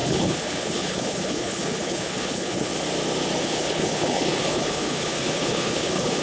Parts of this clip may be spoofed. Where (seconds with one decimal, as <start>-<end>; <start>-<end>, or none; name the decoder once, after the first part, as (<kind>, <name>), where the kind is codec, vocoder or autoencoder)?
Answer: 0.0-2.7 (codec, HILCodec); 3.4-6.2